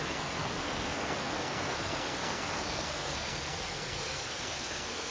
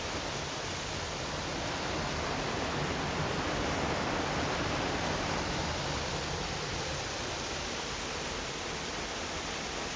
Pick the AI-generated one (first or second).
first